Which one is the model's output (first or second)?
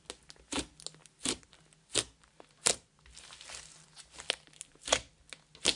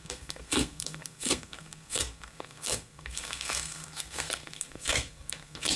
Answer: second